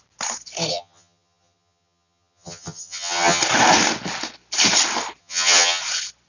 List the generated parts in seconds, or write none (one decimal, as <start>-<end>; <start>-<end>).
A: 0.7-3.4; 5.2-5.8